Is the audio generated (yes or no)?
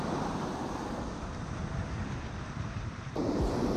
yes